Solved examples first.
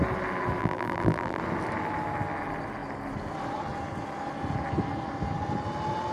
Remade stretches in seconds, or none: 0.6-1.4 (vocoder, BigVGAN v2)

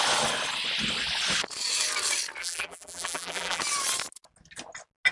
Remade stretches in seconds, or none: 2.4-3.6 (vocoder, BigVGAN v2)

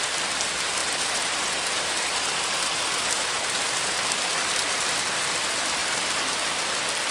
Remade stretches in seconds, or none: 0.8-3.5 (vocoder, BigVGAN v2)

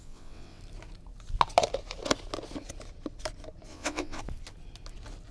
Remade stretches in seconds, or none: 0.0-0.6 (vocoder, WaveNeXt); 3.7-4.2

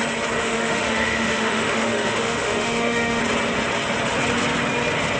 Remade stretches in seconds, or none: 0.4-3.2 (autoencoder, DAC-VAE)

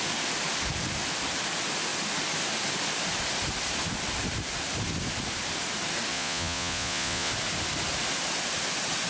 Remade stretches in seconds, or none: 6.1-7.3 (vocoder, Vocos)

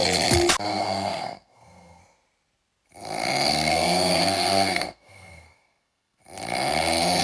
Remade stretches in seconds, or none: 0.7-2.0 (codec, SNAC); 3.5-6.2

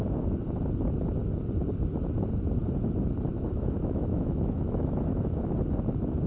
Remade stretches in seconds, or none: 3.3-5.4 (autoencoder, DAC-VAE)